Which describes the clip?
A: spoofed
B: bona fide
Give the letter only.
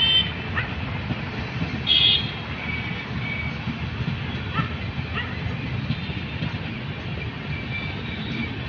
B